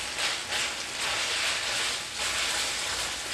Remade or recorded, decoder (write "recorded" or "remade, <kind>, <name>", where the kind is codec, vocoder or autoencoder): recorded